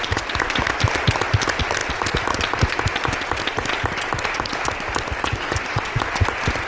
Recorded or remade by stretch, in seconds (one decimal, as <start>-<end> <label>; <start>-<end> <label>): 0.0-1.8 remade; 1.8-5.8 recorded; 5.8-6.7 remade